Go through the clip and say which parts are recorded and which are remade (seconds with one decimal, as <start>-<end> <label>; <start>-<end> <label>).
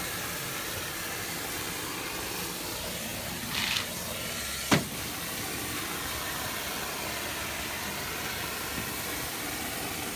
0.0-10.2 recorded